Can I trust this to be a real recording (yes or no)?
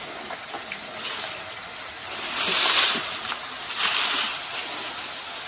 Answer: yes